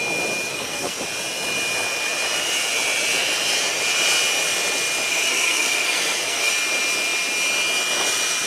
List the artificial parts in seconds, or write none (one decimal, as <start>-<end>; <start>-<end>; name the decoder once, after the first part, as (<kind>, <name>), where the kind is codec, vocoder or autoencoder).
0.5-1.0 (codec, SNAC); 5.1-6.5